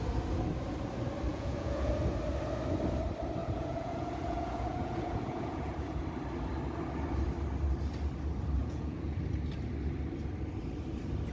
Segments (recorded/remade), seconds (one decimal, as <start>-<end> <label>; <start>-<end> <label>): 0.0-1.3 recorded; 1.3-1.9 remade; 1.9-3.4 recorded; 3.4-6.0 remade; 6.0-8.6 recorded; 8.6-9.2 remade; 9.2-11.3 recorded